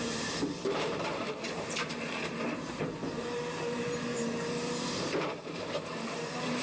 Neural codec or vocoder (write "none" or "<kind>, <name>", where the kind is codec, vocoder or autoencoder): vocoder, BigVGAN v2